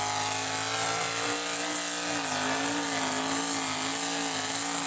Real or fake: real